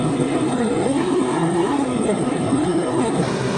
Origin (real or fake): fake